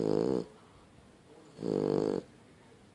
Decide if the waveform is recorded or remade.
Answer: recorded